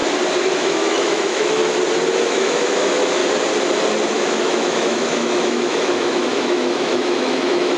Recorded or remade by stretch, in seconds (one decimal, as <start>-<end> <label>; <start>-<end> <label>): 0.0-0.5 recorded; 0.5-1.6 remade; 1.6-2.2 recorded; 2.2-3.2 remade; 3.2-4.1 recorded; 4.1-7.8 remade

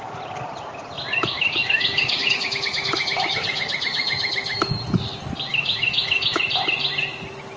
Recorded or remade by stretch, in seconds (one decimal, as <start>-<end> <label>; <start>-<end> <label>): 0.0-1.1 recorded; 1.1-4.6 remade; 4.6-5.5 recorded; 5.5-6.4 remade; 6.4-7.6 recorded

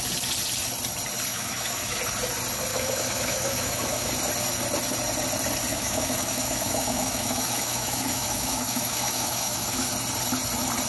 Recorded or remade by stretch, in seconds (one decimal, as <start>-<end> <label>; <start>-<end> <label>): 0.0-1.3 recorded; 1.3-2.0 remade; 2.0-2.7 recorded; 2.7-4.1 remade; 4.1-5.7 recorded; 5.7-9.9 remade; 9.9-10.9 recorded

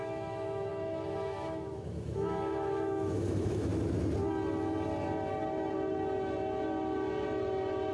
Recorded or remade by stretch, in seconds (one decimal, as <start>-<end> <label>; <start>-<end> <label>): 0.0-3.7 remade; 3.7-7.9 recorded

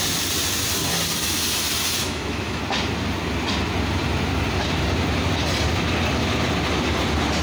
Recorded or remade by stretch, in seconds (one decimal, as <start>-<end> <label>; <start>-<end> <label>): 0.0-2.0 recorded; 2.0-2.6 remade; 2.6-7.4 recorded

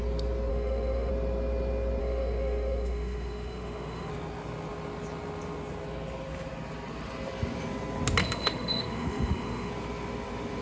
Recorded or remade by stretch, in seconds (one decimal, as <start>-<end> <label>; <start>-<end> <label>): 0.0-0.5 recorded; 0.5-1.1 remade; 1.1-2.0 recorded; 2.0-4.1 remade; 4.1-8.2 recorded; 8.2-9.7 remade; 9.7-10.6 recorded